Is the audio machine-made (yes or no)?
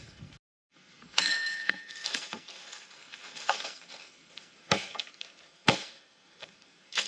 yes